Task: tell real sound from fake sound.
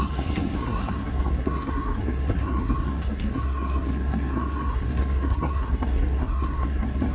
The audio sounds fake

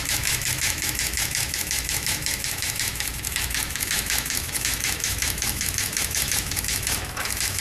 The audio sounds fake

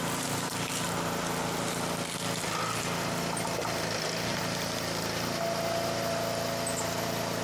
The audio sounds real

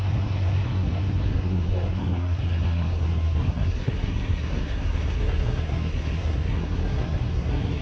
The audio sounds fake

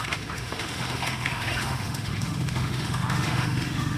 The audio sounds fake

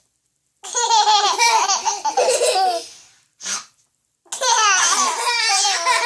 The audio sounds real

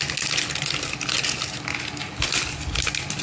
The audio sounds real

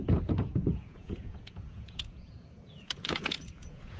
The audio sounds fake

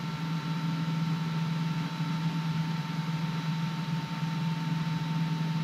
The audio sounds real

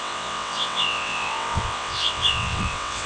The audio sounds fake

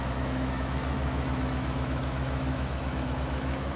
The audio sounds fake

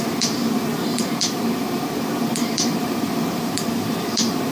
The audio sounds fake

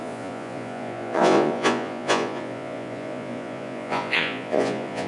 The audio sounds fake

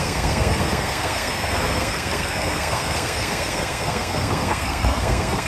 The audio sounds fake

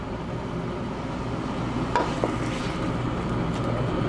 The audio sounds real